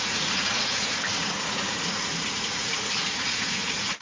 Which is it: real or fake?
fake